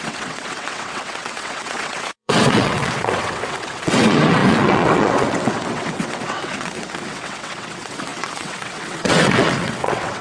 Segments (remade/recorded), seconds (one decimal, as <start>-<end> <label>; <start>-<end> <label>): 0.0-10.2 remade